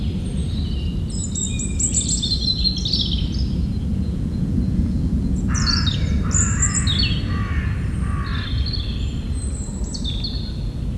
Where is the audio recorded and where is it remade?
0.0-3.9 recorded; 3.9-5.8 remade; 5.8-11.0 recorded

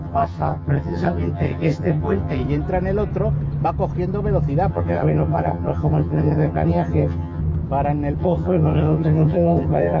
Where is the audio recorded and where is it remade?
0.0-2.4 remade; 2.4-4.7 recorded; 4.7-7.4 remade; 7.4-8.2 recorded; 8.2-10.0 remade

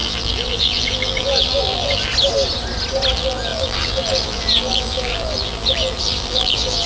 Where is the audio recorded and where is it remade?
0.0-2.1 remade; 2.1-3.1 recorded; 3.1-6.9 remade